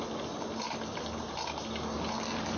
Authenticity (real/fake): real